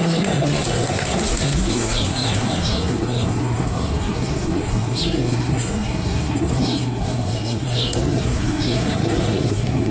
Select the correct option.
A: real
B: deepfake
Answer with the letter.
B